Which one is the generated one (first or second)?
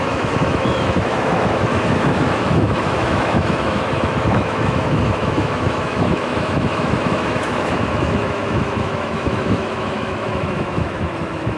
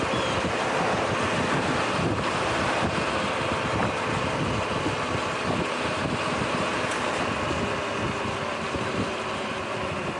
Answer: first